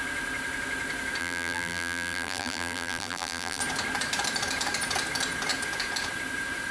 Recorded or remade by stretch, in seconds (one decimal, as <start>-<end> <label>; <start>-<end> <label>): 0.0-1.2 recorded; 1.2-3.6 remade; 3.6-6.7 recorded